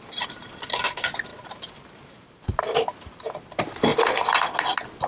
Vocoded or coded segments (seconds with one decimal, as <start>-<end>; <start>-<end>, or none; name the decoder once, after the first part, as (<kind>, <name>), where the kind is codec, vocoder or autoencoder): 1.3-2.6 (vocoder, BigVGAN v2)